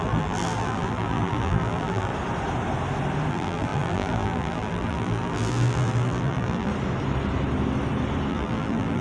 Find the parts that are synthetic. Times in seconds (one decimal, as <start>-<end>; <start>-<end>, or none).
0.0-2.1; 3.3-6.7; 8.3-9.0